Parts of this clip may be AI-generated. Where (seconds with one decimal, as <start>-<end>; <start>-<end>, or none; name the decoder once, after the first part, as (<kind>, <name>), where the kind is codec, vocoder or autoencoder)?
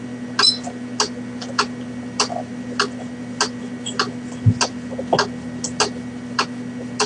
none